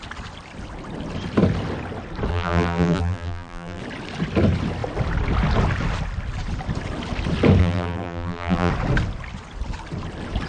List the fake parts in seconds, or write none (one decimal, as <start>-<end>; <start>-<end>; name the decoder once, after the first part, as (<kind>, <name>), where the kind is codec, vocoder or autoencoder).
2.3-3.8 (vocoder, BigVGAN v2); 7.6-8.7